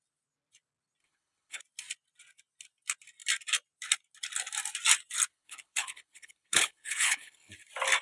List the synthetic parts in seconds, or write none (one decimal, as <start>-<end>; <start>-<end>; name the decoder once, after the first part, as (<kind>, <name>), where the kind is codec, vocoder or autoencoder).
1.0-1.6 (codec, HILCodec); 5.3-7.5